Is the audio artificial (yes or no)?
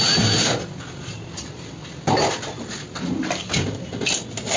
no